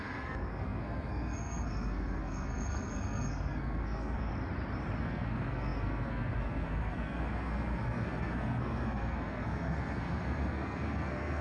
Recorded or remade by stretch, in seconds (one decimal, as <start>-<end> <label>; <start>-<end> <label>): 0.0-4.3 remade; 4.3-5.0 recorded; 5.0-11.4 remade